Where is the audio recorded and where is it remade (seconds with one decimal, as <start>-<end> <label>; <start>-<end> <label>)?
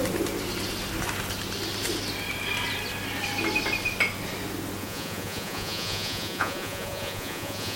0.0-4.8 recorded; 4.8-7.8 remade